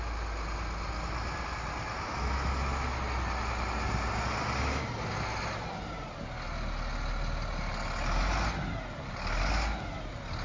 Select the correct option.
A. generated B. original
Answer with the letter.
B